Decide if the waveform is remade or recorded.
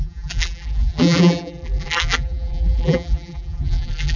remade